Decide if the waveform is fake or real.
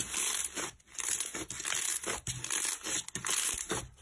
real